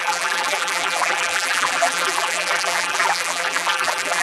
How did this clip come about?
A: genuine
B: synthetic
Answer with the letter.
B